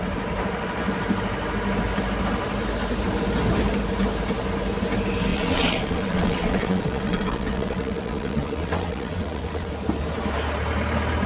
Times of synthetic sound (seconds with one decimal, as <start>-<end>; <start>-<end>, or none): 5.3-9.7